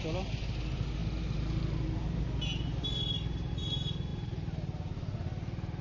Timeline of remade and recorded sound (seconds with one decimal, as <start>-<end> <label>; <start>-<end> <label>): 0.0-5.8 recorded